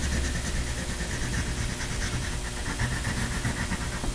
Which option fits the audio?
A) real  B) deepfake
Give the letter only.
A